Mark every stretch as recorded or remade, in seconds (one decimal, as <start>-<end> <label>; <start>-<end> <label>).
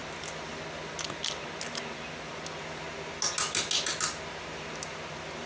0.0-5.5 recorded